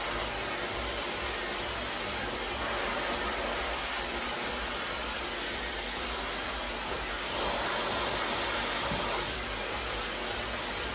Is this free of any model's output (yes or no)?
yes